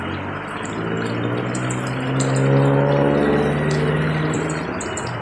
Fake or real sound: real